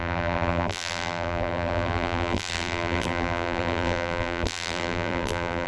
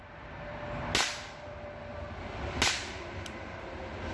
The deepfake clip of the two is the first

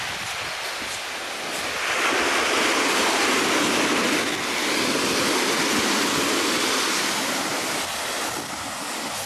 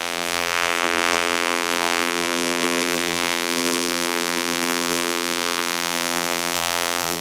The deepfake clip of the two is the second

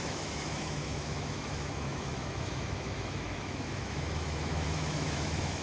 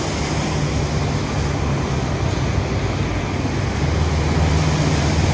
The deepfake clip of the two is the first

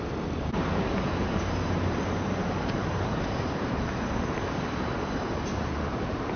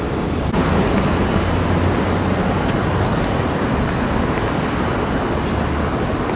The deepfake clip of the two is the first